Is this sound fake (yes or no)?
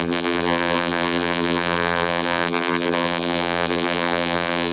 yes